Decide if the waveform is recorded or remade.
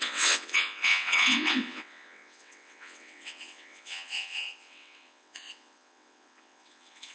remade